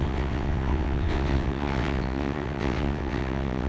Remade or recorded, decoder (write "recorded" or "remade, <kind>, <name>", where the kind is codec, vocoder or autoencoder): remade, vocoder, WaveNeXt